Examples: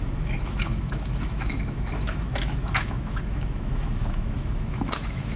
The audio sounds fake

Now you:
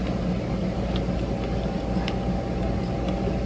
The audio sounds real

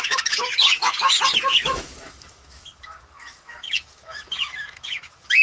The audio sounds fake